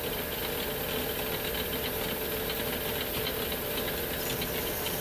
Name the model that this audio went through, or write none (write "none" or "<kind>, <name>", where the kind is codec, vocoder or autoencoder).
none